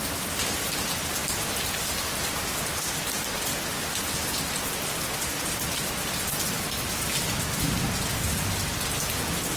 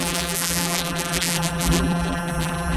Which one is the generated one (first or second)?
second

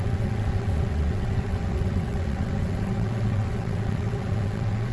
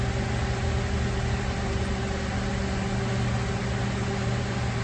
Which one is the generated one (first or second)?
first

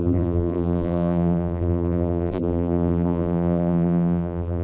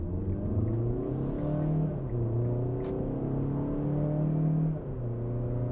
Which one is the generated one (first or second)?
first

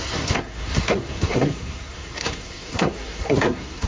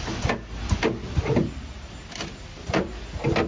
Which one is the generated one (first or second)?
first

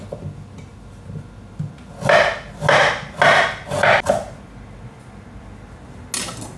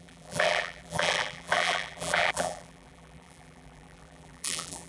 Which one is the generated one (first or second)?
second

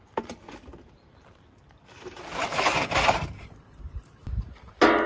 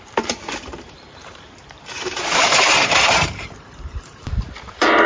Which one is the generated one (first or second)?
second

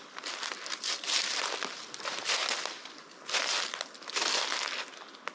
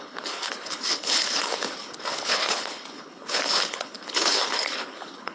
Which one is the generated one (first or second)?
second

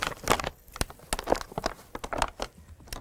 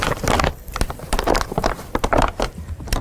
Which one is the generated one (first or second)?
second